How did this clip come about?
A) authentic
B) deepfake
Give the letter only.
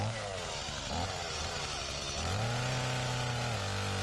A